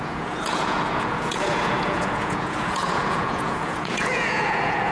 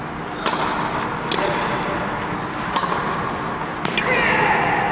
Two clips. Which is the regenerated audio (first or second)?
first